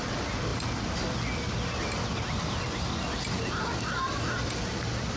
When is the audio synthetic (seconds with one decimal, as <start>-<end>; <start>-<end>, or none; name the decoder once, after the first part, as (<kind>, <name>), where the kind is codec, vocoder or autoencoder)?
none